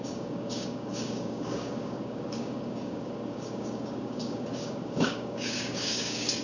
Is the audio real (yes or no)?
no